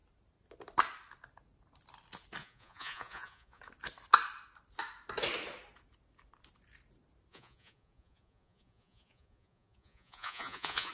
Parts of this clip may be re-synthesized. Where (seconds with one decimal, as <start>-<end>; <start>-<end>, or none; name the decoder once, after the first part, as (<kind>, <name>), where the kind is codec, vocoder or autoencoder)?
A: 2.4-3.6 (vocoder, Vocos); 7.3-10.9